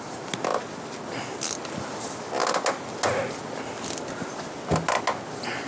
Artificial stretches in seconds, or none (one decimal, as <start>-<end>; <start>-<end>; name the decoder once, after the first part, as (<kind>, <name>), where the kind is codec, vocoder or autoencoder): none